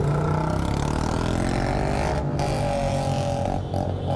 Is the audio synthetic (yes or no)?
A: no